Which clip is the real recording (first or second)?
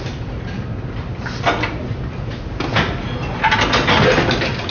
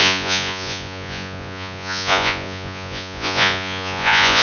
first